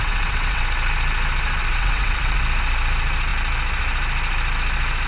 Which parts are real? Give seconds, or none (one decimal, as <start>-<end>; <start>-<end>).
0.6-1.7; 2.4-5.1